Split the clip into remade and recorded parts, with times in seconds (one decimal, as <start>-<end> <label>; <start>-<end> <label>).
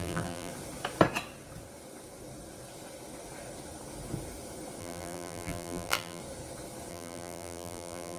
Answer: 0.0-0.5 remade; 0.5-4.8 recorded; 4.8-6.2 remade; 6.2-6.9 recorded; 6.9-8.2 remade